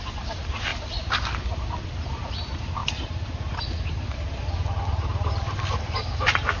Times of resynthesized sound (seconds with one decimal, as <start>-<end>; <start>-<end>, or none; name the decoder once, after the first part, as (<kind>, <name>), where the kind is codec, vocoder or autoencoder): 0.0-2.8 (vocoder, BigVGAN v2); 3.6-6.6